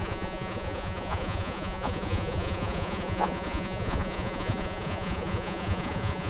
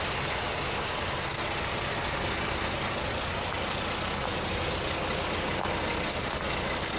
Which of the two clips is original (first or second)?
second